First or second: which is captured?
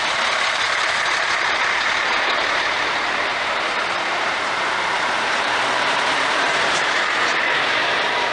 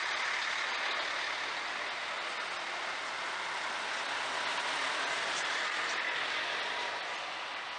second